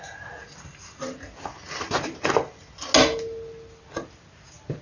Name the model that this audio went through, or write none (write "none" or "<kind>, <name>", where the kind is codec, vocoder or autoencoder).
none